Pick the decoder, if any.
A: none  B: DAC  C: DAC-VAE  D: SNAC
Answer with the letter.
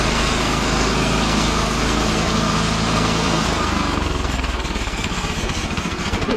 D